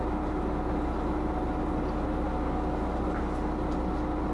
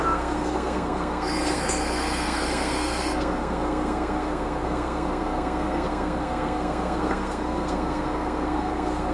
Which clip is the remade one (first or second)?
second